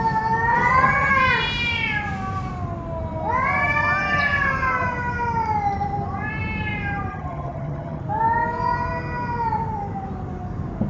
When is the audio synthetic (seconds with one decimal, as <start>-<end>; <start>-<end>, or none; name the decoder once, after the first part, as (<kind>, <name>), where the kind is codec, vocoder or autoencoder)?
0.5-1.1 (vocoder, HiFi-GAN); 7.1-8.0